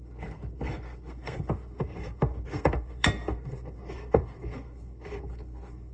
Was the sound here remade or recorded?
remade